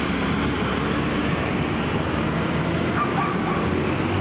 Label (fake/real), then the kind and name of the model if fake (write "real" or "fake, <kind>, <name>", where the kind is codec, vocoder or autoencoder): real